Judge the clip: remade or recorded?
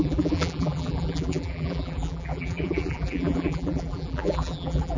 remade